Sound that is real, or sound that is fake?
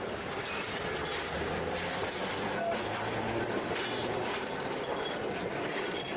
fake